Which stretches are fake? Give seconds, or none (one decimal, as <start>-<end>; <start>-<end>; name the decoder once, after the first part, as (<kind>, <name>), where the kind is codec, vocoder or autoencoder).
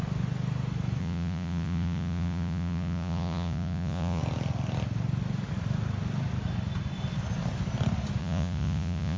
1.0-4.2 (vocoder, Vocos); 8.2-9.2